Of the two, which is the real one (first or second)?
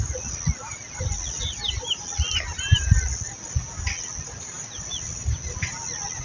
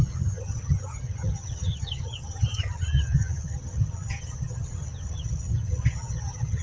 first